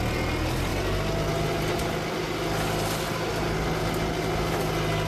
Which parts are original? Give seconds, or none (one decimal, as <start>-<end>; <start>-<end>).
0.0-5.1